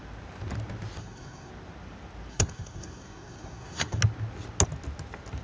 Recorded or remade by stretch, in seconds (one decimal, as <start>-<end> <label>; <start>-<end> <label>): 0.0-1.0 recorded; 1.0-1.5 remade; 1.5-2.3 recorded; 2.3-4.0 remade; 4.0-5.4 recorded